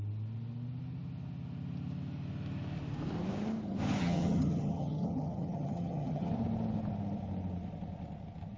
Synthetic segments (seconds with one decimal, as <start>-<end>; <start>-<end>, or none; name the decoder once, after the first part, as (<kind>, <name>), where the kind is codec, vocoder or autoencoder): 4.0-6.3 (vocoder, HiFi-GAN)